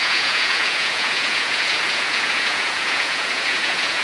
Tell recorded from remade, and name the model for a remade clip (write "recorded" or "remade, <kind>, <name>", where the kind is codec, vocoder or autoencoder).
remade, vocoder, Vocos